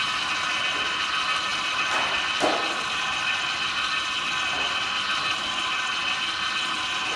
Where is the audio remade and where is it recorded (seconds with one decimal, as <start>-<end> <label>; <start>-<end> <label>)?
0.0-7.2 recorded